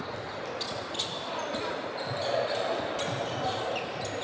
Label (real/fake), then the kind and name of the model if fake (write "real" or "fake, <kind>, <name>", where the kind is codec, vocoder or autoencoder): real